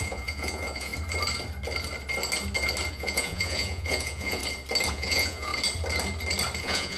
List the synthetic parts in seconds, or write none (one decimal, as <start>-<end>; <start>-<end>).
0.0-0.9; 2.9-4.4; 4.9-5.5; 6.6-7.0